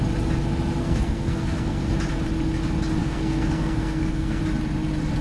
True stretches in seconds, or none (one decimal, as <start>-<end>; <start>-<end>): 0.0-0.8; 1.9-3.0; 4.4-5.2